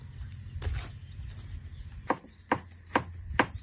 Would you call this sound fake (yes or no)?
no